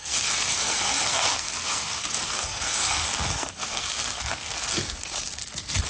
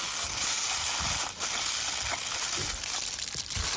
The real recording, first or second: second